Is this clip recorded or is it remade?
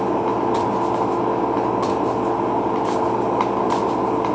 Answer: recorded